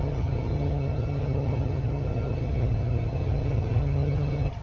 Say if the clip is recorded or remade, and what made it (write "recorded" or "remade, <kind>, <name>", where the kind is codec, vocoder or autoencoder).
remade, vocoder, HiFi-GAN